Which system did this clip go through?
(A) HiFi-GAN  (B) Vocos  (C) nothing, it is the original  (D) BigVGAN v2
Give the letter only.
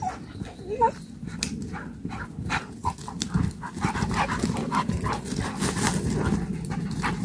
C